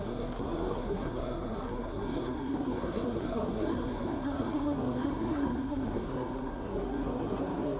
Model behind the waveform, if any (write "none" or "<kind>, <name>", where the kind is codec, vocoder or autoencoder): codec, SNAC